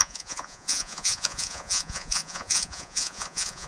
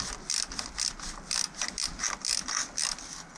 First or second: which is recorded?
second